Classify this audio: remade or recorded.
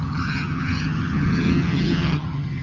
remade